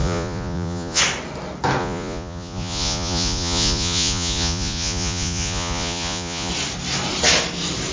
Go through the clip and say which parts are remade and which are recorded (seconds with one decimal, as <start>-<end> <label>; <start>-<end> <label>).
0.0-1.0 remade; 1.0-1.8 recorded; 1.8-6.5 remade; 6.5-7.9 recorded